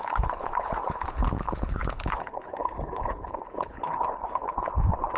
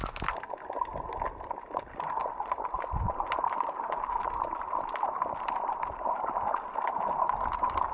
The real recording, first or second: second